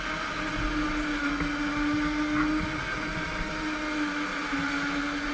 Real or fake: real